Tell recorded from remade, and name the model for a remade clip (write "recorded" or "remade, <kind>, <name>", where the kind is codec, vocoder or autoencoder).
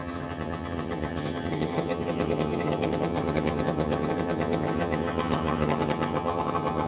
remade, vocoder, HiFi-GAN